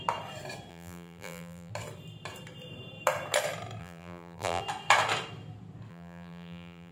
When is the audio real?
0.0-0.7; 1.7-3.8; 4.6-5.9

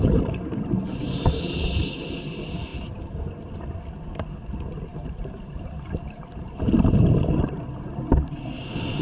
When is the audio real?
0.0-4.9; 6.6-9.0

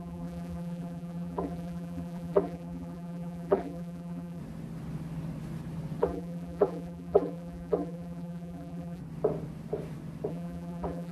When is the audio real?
4.4-6.0; 9.0-10.3

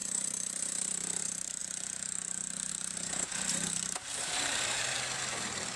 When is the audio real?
1.6-2.7

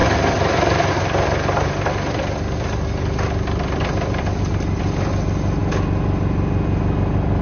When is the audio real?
4.4-7.4